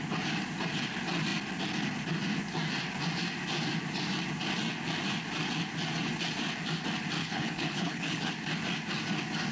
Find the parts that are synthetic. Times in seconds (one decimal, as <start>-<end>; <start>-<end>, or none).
7.2-8.3